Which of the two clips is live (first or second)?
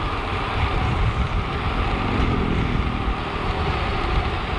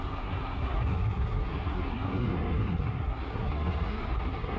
first